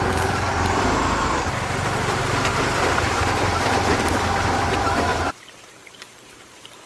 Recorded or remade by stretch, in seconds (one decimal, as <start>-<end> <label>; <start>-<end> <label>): 0.0-6.9 remade

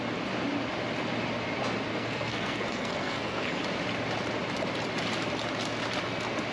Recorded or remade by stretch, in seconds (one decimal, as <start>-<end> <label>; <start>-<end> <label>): 0.0-1.9 recorded; 1.9-3.6 remade; 3.6-6.5 recorded

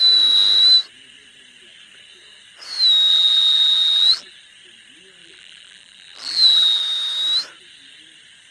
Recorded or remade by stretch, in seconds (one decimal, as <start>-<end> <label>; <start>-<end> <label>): 0.0-3.1 recorded; 3.1-4.3 remade; 4.3-5.2 recorded; 5.2-6.8 remade; 6.8-8.5 recorded

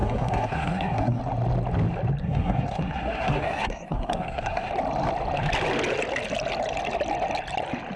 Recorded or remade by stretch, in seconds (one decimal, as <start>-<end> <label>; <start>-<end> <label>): 0.0-1.2 remade; 1.2-2.2 recorded; 2.2-4.7 remade; 4.7-8.0 recorded